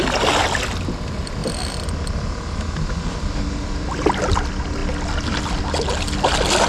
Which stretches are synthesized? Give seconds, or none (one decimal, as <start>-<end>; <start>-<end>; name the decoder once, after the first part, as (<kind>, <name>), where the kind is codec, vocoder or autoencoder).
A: 1.4-2.0 (vocoder, BigVGAN v2)